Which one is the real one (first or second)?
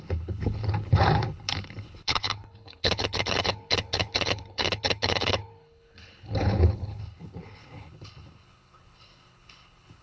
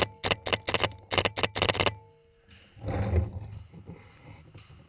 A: second